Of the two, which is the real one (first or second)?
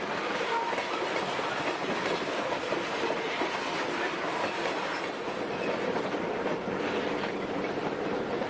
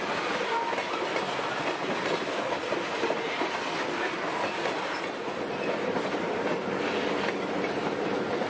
second